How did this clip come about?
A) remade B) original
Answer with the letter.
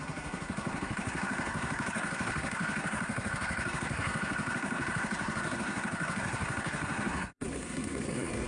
A